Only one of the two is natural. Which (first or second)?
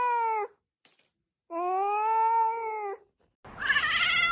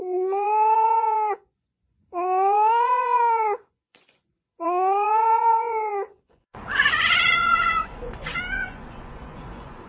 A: first